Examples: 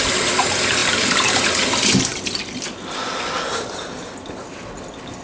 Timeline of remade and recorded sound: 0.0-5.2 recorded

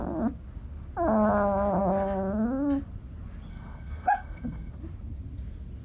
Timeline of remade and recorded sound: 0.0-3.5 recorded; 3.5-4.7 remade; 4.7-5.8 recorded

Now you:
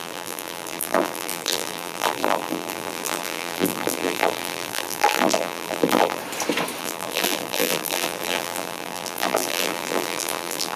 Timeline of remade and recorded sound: 0.0-6.2 remade; 6.2-6.8 recorded; 6.8-10.8 remade

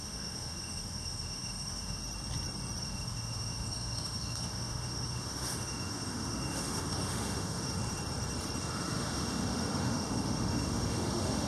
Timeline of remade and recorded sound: 0.0-2.0 remade; 2.0-2.8 recorded; 2.8-7.8 remade; 7.8-8.6 recorded; 8.6-11.5 remade

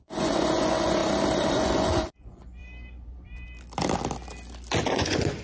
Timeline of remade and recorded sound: 0.0-1.0 remade; 1.0-1.5 recorded; 1.5-2.6 remade; 2.6-4.9 recorded; 4.9-5.4 remade

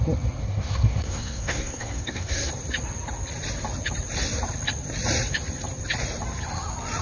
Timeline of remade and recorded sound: 0.0-0.4 recorded; 0.4-2.5 remade; 2.5-7.0 recorded